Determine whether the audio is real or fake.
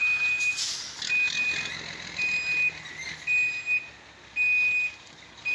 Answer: real